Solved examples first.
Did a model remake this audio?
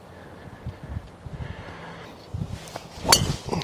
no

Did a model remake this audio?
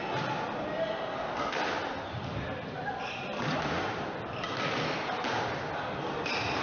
no